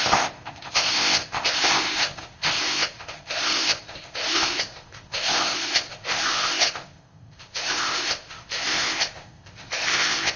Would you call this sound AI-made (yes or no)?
yes